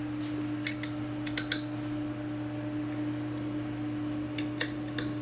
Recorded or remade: recorded